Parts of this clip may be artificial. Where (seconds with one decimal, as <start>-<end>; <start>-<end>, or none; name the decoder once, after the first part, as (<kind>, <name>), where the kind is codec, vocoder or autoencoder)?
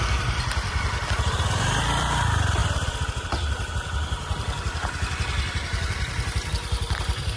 0.0-7.4 (vocoder, BigVGAN v2)